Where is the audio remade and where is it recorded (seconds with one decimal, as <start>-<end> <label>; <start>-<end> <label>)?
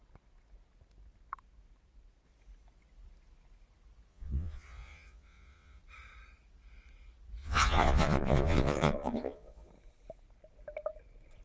0.0-4.1 recorded; 4.1-5.8 remade; 5.8-7.4 recorded; 7.4-9.7 remade; 9.7-11.4 recorded